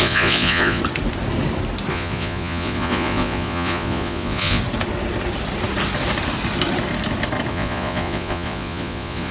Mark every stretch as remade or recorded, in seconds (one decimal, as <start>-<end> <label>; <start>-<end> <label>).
0.0-0.8 remade; 0.8-1.9 recorded; 1.9-4.6 remade; 4.6-7.5 recorded; 7.5-9.3 remade